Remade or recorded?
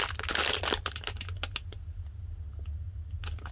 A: recorded